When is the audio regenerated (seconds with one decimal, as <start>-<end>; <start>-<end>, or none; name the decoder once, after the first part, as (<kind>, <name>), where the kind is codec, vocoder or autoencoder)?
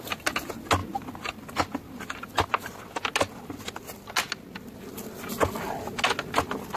none